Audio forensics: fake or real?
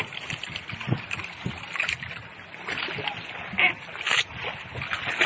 real